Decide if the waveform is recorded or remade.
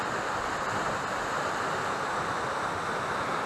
recorded